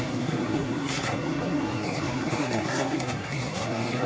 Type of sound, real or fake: fake